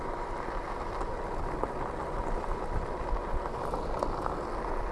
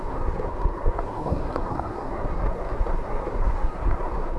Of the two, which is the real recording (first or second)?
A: first